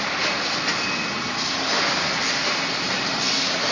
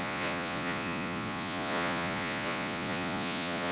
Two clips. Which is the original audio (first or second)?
first